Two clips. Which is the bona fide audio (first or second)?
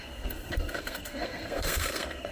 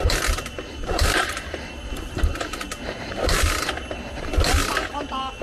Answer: second